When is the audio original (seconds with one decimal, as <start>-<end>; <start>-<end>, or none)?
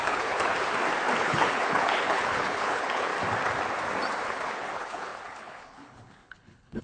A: 0.5-1.2; 3.1-4.2